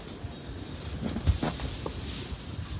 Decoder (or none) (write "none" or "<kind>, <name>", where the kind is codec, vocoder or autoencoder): none